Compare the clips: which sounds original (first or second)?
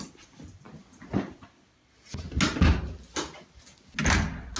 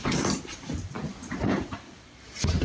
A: first